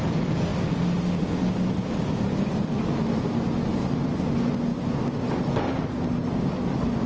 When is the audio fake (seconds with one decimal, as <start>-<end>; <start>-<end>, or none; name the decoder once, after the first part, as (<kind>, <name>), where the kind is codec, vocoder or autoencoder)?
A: none